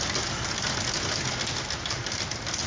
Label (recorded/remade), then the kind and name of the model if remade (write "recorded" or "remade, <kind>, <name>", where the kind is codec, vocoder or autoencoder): recorded